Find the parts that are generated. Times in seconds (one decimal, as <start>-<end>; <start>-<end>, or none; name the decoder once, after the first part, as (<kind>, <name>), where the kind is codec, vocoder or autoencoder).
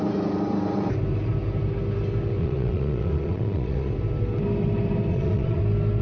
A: 2.4-3.9 (vocoder, Vocos); 5.1-5.6